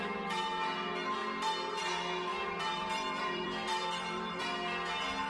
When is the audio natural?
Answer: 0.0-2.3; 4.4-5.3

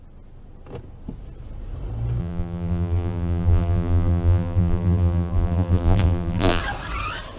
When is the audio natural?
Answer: 0.0-2.2; 6.6-7.4

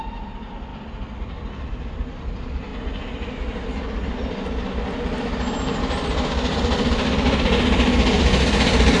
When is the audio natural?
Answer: 0.0-9.0

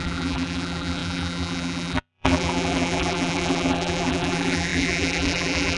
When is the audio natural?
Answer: none

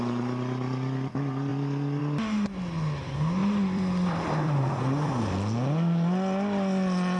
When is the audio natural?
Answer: 0.0-1.5; 2.0-3.4; 5.1-7.2

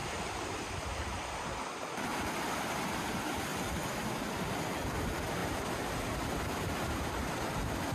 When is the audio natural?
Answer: 0.0-0.7; 3.5-4.2; 5.4-6.5

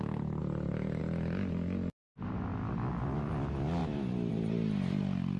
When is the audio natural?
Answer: 0.0-0.4; 1.0-5.4

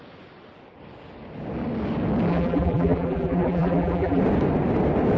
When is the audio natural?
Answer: 0.0-2.3; 4.2-5.2